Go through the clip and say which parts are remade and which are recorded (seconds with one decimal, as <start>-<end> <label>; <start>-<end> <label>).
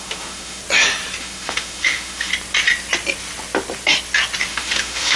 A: 0.0-0.6 remade; 0.6-1.2 recorded; 1.2-2.3 remade; 2.3-4.5 recorded; 4.5-5.2 remade